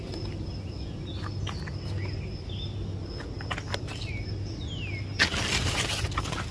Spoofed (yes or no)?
no